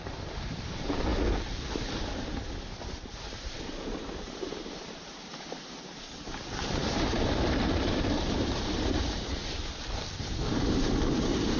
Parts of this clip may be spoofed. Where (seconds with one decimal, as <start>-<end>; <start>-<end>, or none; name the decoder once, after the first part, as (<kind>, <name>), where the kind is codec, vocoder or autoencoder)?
0.0-1.1 (vocoder, BigVGAN v2); 2.9-9.4; 10.5-11.6